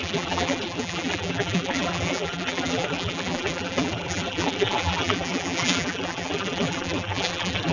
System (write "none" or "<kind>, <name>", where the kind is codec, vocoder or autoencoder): vocoder, BigVGAN v2